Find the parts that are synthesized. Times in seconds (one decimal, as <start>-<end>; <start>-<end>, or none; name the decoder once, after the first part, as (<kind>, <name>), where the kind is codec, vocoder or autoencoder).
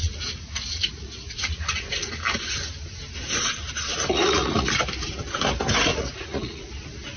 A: 0.0-2.1 (vocoder, Vocos); 4.1-4.7; 5.9-6.7